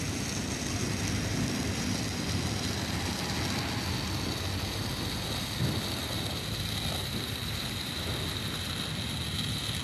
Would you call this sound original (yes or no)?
yes